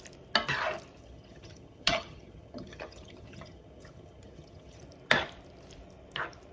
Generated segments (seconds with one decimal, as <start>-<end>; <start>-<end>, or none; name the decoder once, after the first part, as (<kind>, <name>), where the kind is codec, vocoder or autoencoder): 1.0-4.8 (vocoder, HiFi-GAN)